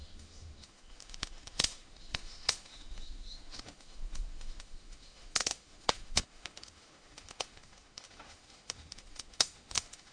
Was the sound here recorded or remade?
remade